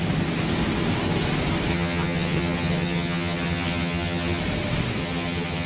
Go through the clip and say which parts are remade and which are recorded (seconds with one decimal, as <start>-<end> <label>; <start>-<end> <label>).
0.0-1.7 recorded; 1.7-4.4 remade; 4.4-5.0 recorded; 5.0-5.7 remade